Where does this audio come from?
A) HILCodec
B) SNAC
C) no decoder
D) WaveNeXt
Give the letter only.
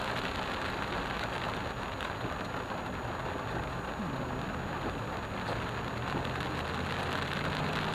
C